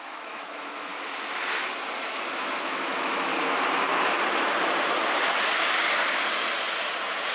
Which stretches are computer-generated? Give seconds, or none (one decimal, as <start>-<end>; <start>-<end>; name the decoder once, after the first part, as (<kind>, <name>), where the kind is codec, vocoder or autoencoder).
0.0-0.9 (autoencoder, DAC-VAE); 2.0-3.3